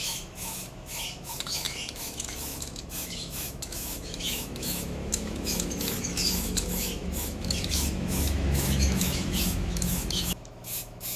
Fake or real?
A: fake